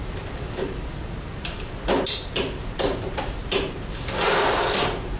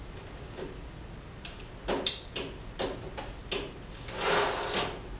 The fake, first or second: first